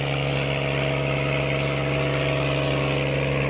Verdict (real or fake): real